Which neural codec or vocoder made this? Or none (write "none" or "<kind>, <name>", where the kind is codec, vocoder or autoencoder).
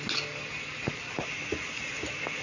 none